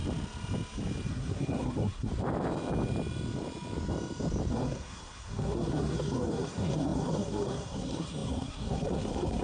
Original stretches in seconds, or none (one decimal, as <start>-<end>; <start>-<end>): 0.0-1.1; 2.1-4.5